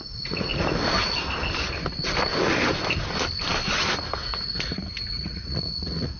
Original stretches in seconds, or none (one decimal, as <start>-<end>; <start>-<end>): 0.5-4.2